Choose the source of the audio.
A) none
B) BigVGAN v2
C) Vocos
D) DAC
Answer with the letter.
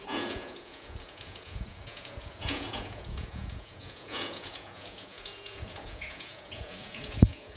C